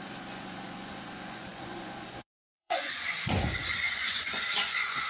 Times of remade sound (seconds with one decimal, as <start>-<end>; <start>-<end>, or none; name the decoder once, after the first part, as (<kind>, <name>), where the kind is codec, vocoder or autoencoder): 0.0-5.1 (vocoder, Vocos)